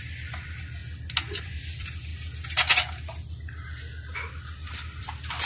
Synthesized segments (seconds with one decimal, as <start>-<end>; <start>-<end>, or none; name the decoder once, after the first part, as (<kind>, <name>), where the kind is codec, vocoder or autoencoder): 0.0-0.8 (vocoder, BigVGAN v2); 1.4-2.1; 4.7-5.5